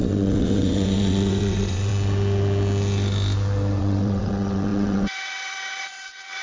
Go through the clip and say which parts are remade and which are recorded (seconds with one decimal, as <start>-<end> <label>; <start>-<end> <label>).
0.0-1.9 remade; 1.9-3.8 recorded; 3.8-6.4 remade